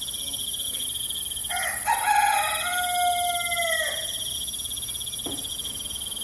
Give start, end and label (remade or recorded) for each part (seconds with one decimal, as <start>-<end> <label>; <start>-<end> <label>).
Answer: 0.0-6.2 recorded